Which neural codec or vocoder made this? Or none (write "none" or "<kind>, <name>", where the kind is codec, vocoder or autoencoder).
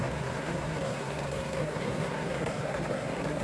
codec, SNAC